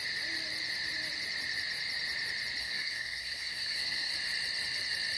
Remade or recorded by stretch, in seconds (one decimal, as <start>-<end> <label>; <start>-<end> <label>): 0.0-2.6 recorded; 2.6-4.1 remade; 4.1-5.2 recorded